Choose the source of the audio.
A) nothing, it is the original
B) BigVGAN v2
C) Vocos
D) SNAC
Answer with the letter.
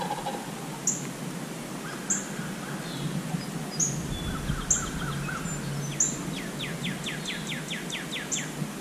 A